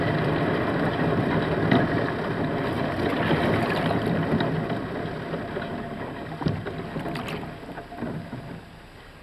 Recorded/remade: recorded